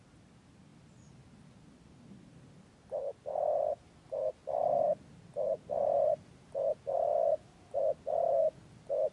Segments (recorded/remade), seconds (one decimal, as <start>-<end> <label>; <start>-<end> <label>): 0.0-4.4 recorded; 4.4-6.5 remade; 6.5-9.1 recorded

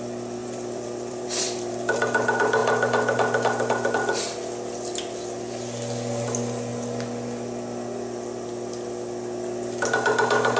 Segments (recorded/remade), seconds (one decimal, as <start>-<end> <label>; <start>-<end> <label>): 0.0-0.4 recorded; 0.4-1.7 remade; 1.7-10.6 recorded

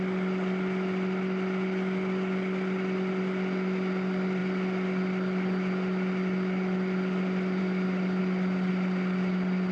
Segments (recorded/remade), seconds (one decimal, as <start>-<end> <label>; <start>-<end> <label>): 0.0-9.7 recorded

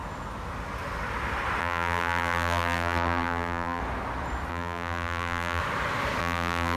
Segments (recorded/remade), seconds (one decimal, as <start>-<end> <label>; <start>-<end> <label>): 0.0-1.6 recorded; 1.6-3.8 remade; 3.8-4.5 recorded; 4.5-5.6 remade; 5.6-6.2 recorded; 6.2-6.8 remade

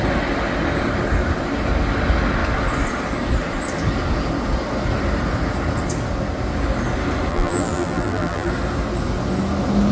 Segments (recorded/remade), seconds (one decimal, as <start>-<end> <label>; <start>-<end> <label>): 0.0-7.3 recorded; 7.3-8.5 remade; 8.5-9.9 recorded